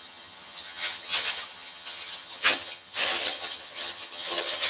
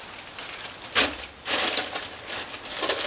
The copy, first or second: first